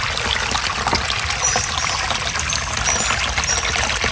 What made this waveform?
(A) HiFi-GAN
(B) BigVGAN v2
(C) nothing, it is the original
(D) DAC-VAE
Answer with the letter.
C